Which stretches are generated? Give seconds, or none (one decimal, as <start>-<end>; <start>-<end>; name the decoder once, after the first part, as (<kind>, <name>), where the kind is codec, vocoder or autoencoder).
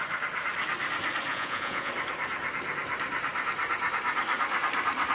1.3-1.9 (vocoder, Vocos)